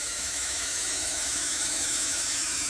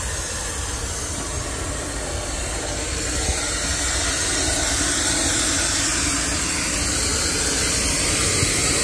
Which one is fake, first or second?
first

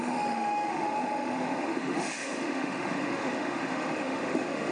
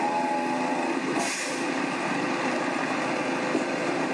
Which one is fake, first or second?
first